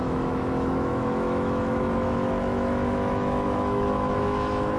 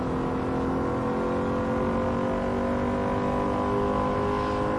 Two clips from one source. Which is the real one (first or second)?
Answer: second